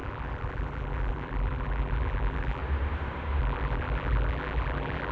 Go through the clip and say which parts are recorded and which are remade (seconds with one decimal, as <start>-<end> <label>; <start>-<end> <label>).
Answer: 0.0-2.6 remade; 2.6-3.4 recorded; 3.4-5.1 remade